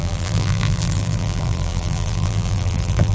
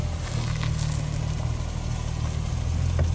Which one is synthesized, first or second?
first